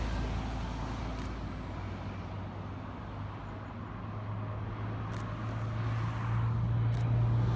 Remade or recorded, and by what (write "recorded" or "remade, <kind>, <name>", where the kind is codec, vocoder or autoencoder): recorded